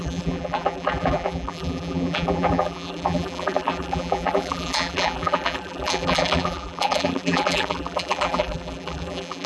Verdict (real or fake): fake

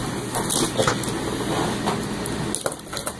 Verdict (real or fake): real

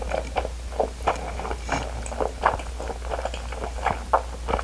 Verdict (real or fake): real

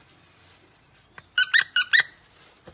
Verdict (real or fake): real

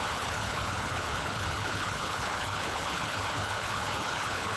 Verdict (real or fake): fake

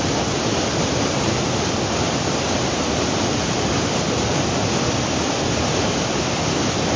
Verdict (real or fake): real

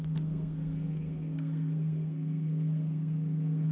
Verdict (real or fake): fake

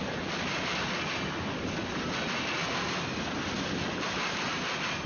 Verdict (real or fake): real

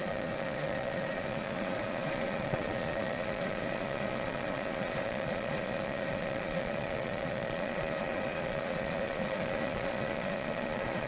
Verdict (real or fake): fake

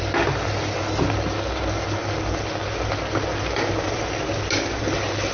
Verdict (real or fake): real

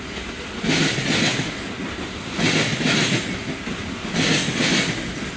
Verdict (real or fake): real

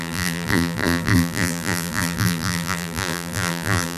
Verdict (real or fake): fake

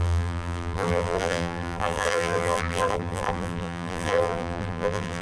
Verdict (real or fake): fake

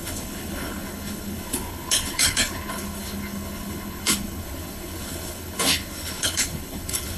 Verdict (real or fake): fake